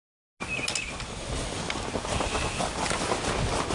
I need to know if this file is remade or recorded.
recorded